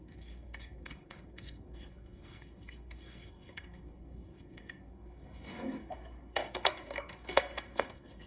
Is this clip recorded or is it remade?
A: remade